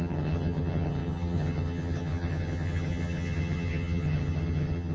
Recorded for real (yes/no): no